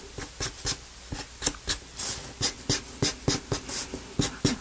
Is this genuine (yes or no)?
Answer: yes